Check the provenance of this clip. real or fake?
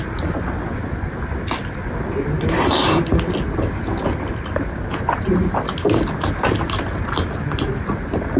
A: real